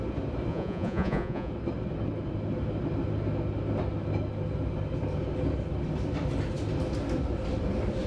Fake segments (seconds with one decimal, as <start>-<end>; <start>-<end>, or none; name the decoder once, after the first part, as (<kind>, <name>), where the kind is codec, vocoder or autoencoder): 0.5-1.5 (vocoder, Vocos)